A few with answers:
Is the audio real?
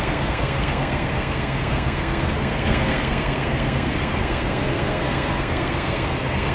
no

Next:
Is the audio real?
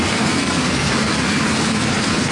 no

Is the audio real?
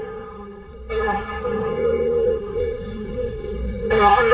no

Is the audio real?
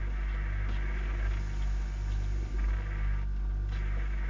yes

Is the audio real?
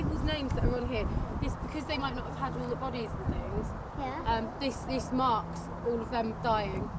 yes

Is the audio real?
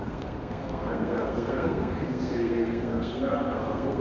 no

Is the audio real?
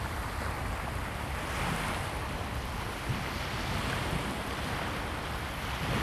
yes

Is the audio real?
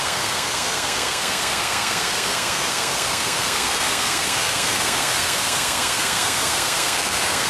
no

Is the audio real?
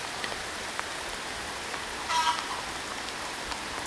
yes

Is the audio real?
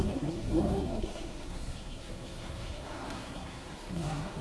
no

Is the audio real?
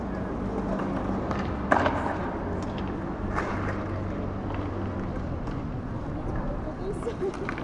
yes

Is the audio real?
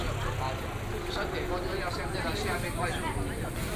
yes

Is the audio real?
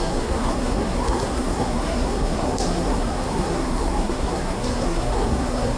no